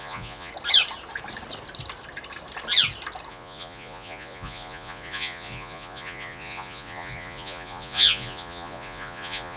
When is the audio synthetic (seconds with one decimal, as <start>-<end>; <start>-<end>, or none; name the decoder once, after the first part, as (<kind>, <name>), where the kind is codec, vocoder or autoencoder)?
0.0-0.5 (vocoder, Vocos); 3.3-9.6